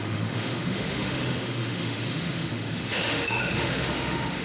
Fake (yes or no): yes